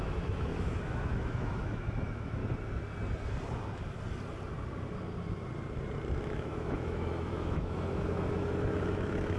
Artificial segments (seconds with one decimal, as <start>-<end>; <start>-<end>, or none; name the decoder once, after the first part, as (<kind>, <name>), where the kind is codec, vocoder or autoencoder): 0.0-2.4 (autoencoder, DAC-VAE); 6.2-9.4

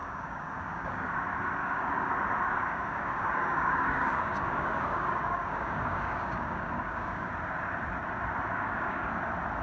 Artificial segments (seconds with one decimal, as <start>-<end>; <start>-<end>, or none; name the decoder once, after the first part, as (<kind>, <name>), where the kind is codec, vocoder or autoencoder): 0.0-1.1 (codec, DAC); 1.6-2.1; 2.5-7.3; 8.5-9.2

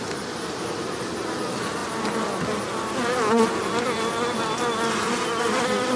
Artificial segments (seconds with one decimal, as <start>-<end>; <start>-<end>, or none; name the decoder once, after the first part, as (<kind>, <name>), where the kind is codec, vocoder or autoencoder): none

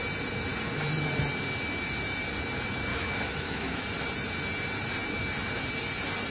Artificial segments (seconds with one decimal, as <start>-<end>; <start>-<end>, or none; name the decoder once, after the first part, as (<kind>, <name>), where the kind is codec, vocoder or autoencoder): 2.9-3.8 (autoencoder, DAC-VAE)

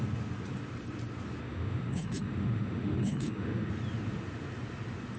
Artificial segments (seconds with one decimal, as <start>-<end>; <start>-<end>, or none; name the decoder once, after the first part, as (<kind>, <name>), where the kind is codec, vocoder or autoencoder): 1.4-3.7 (autoencoder, DAC-VAE)

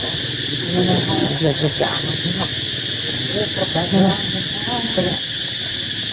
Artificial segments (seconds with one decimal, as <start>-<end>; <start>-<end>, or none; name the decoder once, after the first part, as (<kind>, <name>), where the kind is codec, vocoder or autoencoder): 1.2-2.0 (vocoder, HiFi-GAN); 5.1-5.6

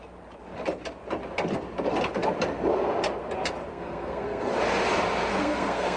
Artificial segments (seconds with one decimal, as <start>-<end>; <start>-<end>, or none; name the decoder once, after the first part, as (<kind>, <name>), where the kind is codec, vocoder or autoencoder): 3.7-4.5 (codec, SNAC); 5.3-6.0